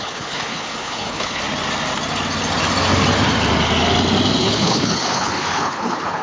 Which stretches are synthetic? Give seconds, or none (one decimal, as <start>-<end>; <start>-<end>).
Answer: 0.0-1.4; 4.4-6.2